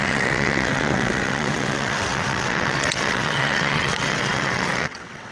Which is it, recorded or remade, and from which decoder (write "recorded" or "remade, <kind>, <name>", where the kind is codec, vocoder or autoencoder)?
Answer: remade, vocoder, WaveNeXt